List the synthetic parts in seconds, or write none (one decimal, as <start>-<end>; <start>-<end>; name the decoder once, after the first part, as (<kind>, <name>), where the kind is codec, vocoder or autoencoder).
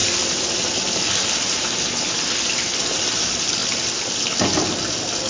none